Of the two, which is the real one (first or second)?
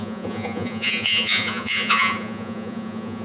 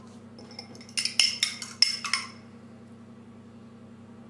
second